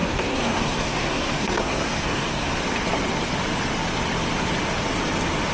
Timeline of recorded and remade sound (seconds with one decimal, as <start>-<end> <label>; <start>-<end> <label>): 0.0-2.6 remade; 2.6-5.5 recorded